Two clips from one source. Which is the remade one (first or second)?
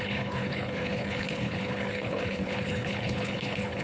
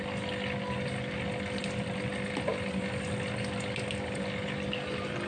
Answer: first